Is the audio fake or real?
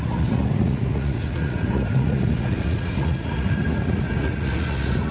fake